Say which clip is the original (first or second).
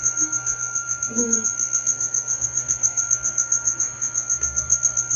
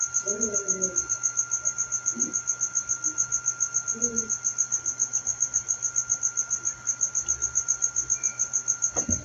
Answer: second